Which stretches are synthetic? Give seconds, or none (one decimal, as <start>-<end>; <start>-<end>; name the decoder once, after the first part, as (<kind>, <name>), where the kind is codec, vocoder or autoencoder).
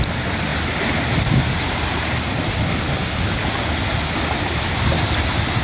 0.5-2.0 (vocoder, BigVGAN v2)